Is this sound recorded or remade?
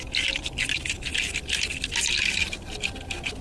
recorded